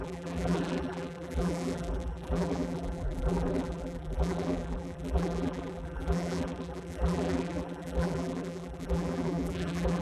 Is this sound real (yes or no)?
no